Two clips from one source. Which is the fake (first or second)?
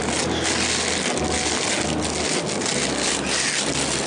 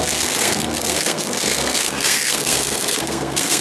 second